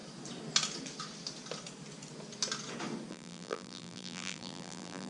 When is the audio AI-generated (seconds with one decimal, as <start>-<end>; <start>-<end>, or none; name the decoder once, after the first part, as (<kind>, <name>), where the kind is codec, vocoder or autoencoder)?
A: 3.1-5.1 (vocoder, BigVGAN v2)